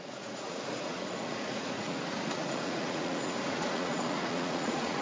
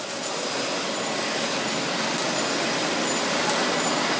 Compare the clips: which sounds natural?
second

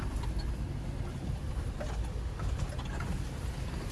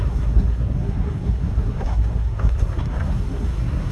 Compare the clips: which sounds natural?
first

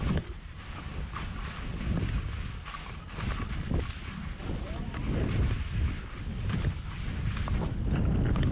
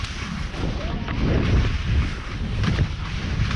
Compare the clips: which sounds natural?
first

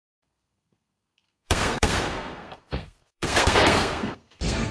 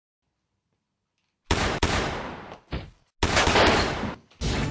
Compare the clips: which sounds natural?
second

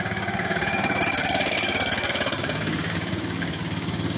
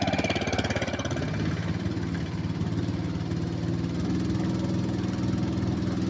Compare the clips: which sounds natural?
second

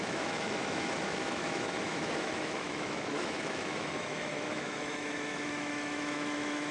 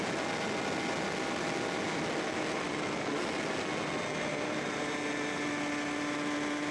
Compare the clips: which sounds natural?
second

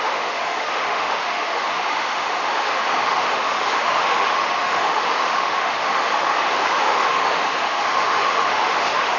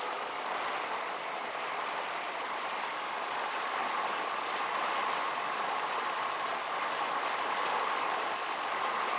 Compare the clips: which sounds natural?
second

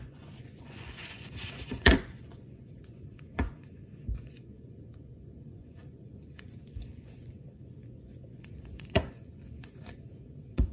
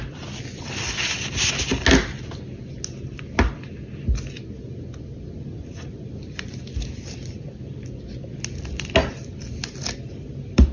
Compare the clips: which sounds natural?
second